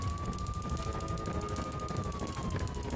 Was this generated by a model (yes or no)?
no